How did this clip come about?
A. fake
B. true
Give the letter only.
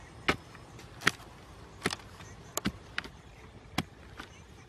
B